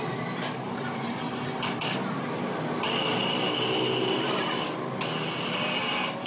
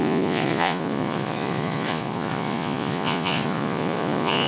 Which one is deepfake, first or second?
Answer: second